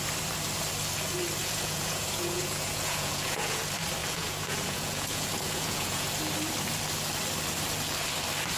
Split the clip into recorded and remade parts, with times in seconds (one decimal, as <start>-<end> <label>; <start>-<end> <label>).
0.0-1.4 recorded; 1.4-3.6 remade; 3.6-4.0 recorded; 4.0-6.1 remade; 6.1-8.6 recorded